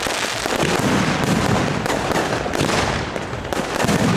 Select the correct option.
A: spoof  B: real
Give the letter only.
B